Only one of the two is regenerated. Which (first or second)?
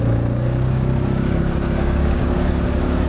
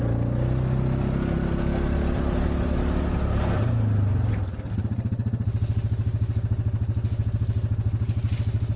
first